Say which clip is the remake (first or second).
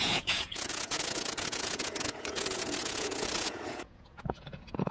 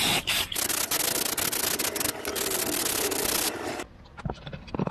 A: first